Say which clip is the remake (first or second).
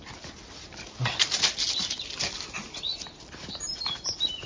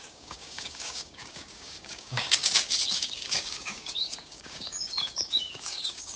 second